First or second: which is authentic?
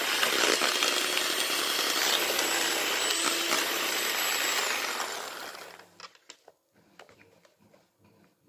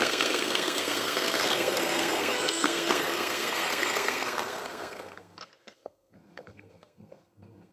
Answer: first